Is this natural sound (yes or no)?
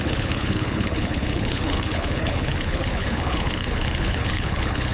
no